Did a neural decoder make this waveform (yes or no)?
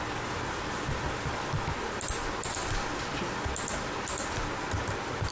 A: no